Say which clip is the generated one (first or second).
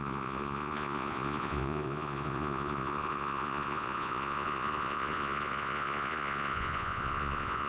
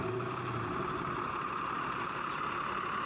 first